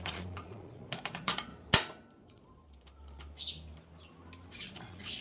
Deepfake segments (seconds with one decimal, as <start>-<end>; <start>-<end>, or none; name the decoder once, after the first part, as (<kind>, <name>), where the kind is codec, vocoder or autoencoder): 0.0-1.5 (vocoder, Vocos); 2.2-2.6; 4.5-5.2